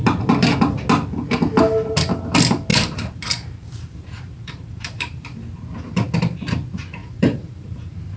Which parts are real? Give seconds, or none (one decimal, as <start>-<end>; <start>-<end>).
0.0-2.7; 5.2-7.0